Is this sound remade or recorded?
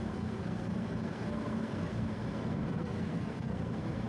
remade